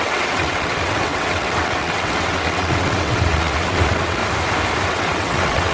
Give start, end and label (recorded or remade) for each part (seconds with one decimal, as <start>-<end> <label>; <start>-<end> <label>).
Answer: 0.0-4.2 remade; 4.2-4.9 recorded; 4.9-5.7 remade